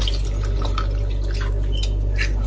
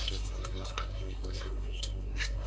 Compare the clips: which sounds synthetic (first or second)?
second